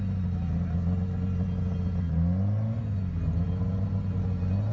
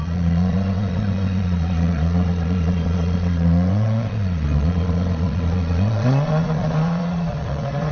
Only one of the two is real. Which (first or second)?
first